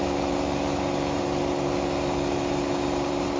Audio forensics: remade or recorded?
recorded